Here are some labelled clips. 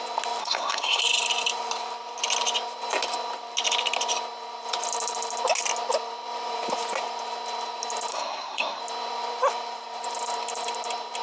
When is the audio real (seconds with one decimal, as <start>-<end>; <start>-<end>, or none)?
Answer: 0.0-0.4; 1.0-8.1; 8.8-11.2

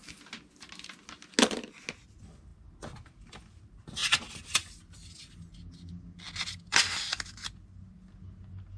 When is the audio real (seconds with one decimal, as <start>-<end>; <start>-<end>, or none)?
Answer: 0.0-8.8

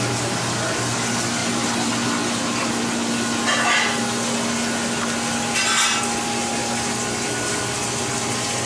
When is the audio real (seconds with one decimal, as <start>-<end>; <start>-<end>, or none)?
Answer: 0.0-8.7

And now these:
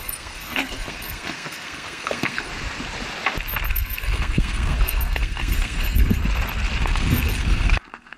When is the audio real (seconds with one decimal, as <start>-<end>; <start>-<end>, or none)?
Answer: 2.5-3.7; 6.2-6.8